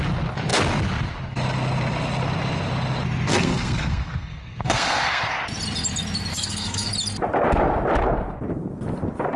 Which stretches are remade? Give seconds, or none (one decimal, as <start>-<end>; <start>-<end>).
3.3-5.2; 6.3-6.9